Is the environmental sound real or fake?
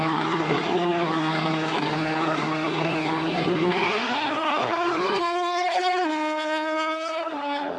fake